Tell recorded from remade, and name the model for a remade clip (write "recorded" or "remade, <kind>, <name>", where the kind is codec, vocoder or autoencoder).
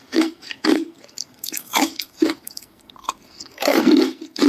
remade, codec, SNAC